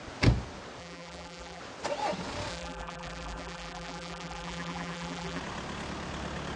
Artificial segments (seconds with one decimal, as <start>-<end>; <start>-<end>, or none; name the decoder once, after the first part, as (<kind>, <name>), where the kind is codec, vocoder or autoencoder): 0.8-1.6 (vocoder, BigVGAN v2); 2.5-5.4